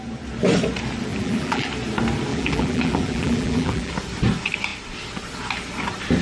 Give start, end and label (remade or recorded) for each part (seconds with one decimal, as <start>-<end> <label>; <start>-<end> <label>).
0.0-1.1 recorded; 1.1-1.7 remade; 1.7-2.3 recorded; 2.3-3.9 remade; 3.9-6.2 recorded